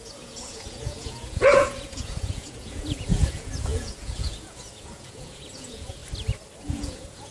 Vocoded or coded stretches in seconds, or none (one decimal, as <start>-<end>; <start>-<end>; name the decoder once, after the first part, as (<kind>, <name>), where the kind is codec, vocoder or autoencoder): 0.0-6.0 (vocoder, Vocos); 6.6-7.3